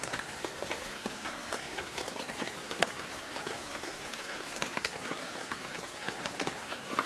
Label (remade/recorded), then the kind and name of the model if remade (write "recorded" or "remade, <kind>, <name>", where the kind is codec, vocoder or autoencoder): remade, codec, SNAC